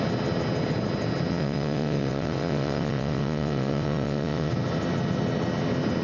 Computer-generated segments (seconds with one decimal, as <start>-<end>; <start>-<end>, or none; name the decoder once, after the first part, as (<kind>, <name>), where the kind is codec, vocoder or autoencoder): 1.3-4.5 (vocoder, WaveNeXt)